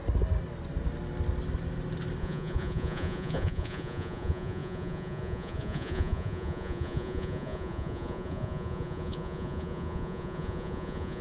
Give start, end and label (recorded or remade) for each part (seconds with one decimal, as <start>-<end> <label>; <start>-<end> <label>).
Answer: 0.0-2.2 recorded; 2.2-11.2 remade

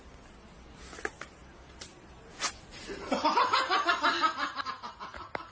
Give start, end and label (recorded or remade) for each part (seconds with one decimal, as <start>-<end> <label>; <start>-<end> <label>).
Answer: 0.0-5.5 recorded

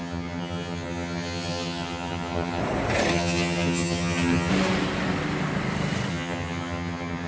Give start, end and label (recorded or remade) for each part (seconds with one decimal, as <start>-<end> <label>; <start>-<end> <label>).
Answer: 0.0-2.6 remade; 2.6-3.1 recorded; 3.1-4.5 remade; 4.5-6.1 recorded; 6.1-7.3 remade

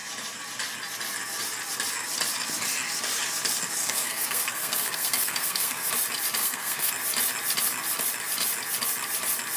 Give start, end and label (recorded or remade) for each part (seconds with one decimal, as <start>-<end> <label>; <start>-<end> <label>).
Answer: 0.0-3.8 recorded; 3.8-5.9 remade; 5.9-6.4 recorded; 6.4-6.9 remade; 6.9-9.6 recorded